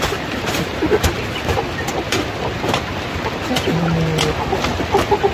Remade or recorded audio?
recorded